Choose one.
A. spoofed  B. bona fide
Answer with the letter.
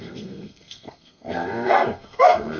A